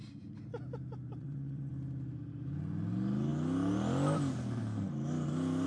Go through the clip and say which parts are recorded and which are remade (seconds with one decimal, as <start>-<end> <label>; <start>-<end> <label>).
0.0-1.2 recorded; 1.2-1.7 remade; 1.7-5.7 recorded